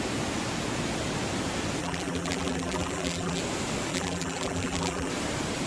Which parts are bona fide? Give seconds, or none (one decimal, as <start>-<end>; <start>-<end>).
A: 0.0-1.8; 3.4-3.9; 5.1-5.7